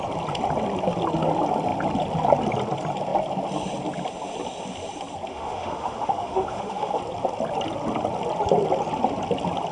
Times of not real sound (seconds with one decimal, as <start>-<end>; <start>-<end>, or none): 5.3-7.0